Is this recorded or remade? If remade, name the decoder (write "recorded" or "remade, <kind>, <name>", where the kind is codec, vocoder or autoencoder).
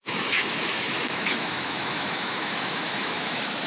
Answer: remade, autoencoder, DAC-VAE